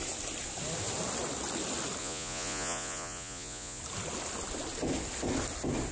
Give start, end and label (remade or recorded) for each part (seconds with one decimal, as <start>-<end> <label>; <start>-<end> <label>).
0.0-2.0 recorded; 2.0-3.8 remade; 3.8-5.9 recorded